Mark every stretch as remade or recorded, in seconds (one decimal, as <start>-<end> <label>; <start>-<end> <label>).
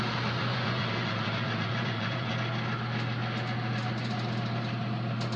0.0-0.4 recorded; 0.4-2.3 remade; 2.3-5.4 recorded